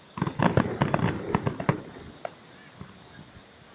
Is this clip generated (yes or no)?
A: no